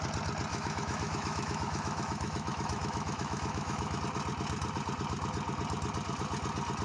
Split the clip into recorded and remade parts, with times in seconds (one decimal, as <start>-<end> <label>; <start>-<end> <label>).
0.0-0.5 recorded; 0.5-4.0 remade; 4.0-6.8 recorded